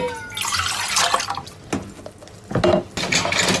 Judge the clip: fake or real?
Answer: real